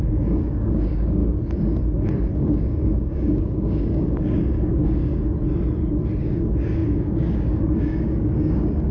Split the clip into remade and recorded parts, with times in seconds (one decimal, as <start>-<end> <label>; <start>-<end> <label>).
0.0-1.2 remade; 1.2-2.3 recorded; 2.3-5.3 remade; 5.3-6.2 recorded; 6.2-8.9 remade